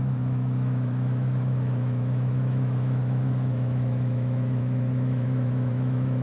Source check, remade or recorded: remade